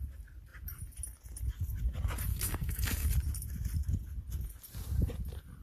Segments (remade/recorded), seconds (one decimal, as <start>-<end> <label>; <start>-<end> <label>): 0.0-2.3 recorded; 2.3-3.1 remade; 3.1-5.6 recorded